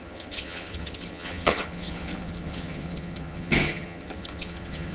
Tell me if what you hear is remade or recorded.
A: remade